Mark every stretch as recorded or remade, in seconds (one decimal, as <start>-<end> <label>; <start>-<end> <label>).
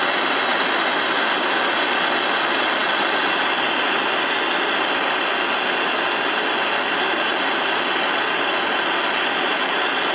0.0-10.1 recorded